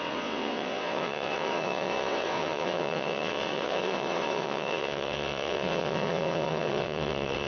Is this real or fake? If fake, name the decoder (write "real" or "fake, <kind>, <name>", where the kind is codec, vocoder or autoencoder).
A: fake, vocoder, WaveNeXt